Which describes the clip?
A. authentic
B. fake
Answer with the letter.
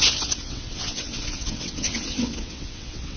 B